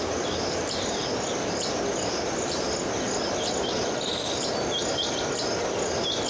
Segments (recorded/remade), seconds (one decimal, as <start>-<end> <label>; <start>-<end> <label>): 0.0-6.3 recorded